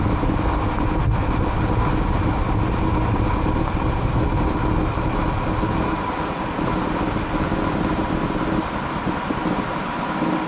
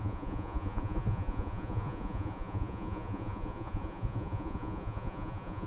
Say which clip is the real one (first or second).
first